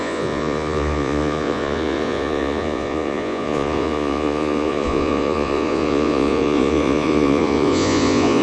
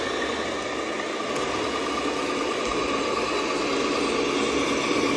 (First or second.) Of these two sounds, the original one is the second